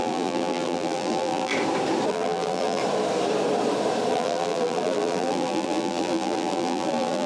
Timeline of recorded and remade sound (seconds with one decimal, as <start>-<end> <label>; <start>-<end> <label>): 0.0-1.5 remade; 1.5-2.1 recorded; 2.1-2.8 remade; 2.8-4.1 recorded; 4.1-7.3 remade